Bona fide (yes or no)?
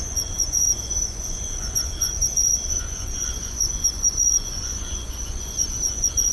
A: no